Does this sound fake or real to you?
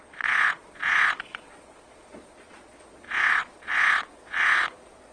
fake